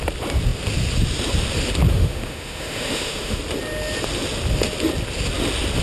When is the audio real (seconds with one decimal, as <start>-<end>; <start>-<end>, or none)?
0.0-1.9; 3.4-5.8